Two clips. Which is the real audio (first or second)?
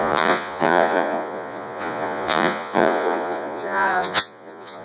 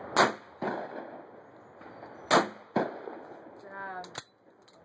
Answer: second